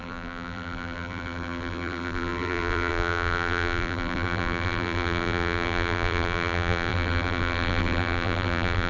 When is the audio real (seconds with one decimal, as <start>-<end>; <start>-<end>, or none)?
none